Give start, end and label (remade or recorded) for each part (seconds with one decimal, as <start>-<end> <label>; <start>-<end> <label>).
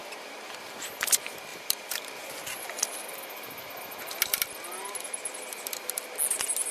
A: 0.0-1.5 recorded; 1.5-2.3 remade; 2.3-6.7 recorded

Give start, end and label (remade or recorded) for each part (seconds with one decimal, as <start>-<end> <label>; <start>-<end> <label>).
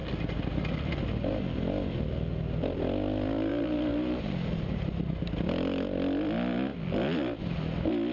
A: 0.0-3.5 recorded; 3.5-5.1 remade; 5.1-8.1 recorded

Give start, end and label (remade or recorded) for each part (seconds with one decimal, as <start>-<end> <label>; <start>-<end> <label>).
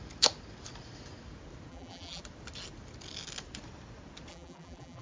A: 0.0-1.7 recorded; 1.7-2.2 remade; 2.2-4.3 recorded; 4.3-5.0 remade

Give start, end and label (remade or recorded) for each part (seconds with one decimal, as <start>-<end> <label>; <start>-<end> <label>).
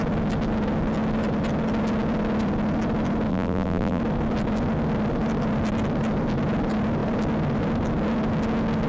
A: 0.0-3.3 recorded; 3.3-4.0 remade; 4.0-8.9 recorded